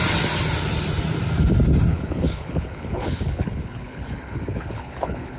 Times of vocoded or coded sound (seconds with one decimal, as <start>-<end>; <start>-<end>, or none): 1.9-5.4